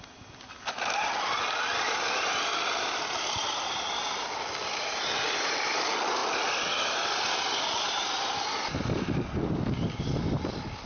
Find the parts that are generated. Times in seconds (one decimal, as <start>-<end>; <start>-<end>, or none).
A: none